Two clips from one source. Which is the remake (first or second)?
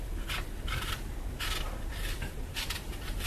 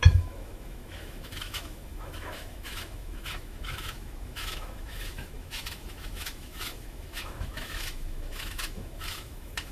second